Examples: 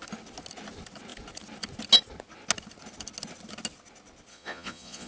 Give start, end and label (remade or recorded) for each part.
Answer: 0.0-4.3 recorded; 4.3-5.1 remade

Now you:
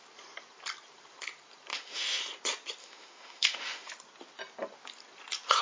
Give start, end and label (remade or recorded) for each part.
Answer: 0.0-1.7 recorded; 1.7-2.2 remade; 2.2-2.8 recorded; 2.8-3.9 remade; 3.9-5.6 recorded

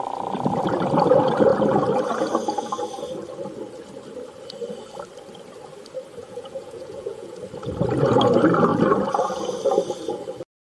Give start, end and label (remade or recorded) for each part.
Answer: 0.0-6.2 recorded; 6.2-7.4 remade; 7.4-10.7 recorded

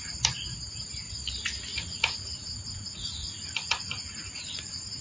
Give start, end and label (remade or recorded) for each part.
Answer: 0.0-1.7 recorded; 1.7-5.0 remade

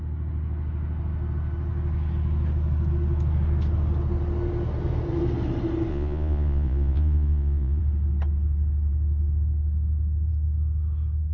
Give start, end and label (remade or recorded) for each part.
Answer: 0.0-5.9 recorded; 5.9-7.8 remade; 7.8-11.3 recorded